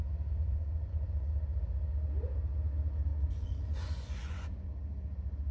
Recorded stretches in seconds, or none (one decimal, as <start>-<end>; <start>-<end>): 0.0-0.4; 1.3-3.1; 4.7-5.5